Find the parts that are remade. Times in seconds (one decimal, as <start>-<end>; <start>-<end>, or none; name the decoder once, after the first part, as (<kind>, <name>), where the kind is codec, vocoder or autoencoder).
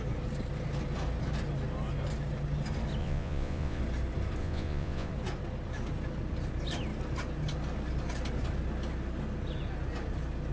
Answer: 3.0-3.8 (vocoder, Vocos); 4.4-5.1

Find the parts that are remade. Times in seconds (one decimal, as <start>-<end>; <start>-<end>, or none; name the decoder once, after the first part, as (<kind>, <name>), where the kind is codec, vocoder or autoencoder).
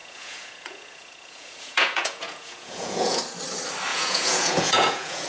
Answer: 0.0-3.2 (vocoder, Vocos); 3.9-5.3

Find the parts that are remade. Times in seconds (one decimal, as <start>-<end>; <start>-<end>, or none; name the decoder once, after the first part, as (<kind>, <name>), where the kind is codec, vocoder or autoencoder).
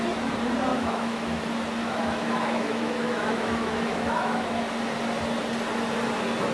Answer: 0.7-1.4 (autoencoder, DAC-VAE); 1.8-4.6